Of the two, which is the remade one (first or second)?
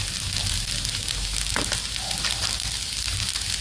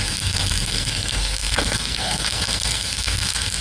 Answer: second